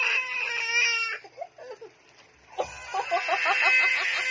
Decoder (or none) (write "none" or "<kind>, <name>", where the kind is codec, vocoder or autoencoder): none